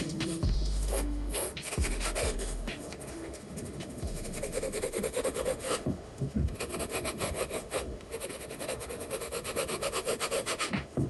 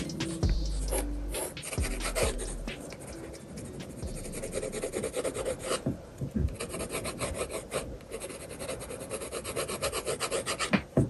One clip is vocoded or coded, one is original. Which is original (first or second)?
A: second